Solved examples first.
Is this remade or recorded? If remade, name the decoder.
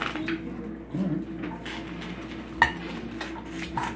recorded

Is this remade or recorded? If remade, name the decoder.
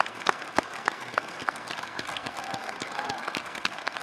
remade, codec, SNAC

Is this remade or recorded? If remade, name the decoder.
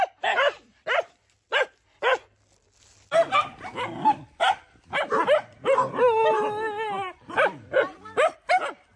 recorded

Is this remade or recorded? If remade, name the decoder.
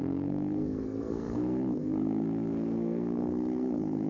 remade, codec, SNAC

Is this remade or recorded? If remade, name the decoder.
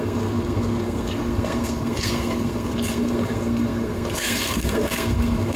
remade, codec, SNAC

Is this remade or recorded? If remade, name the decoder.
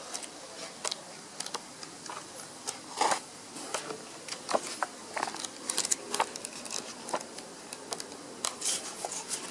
recorded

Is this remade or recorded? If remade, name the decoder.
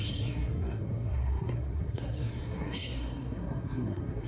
remade, codec, SNAC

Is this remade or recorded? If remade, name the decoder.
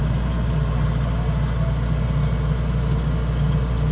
recorded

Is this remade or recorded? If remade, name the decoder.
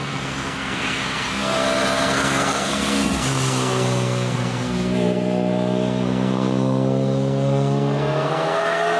remade, codec, SNAC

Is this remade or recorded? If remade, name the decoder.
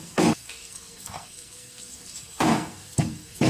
remade, codec, SNAC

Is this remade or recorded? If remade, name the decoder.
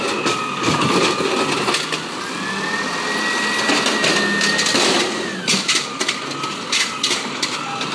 recorded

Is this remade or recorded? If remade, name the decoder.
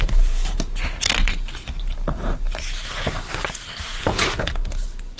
recorded